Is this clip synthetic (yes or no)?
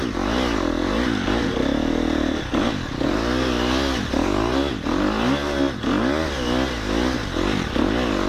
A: no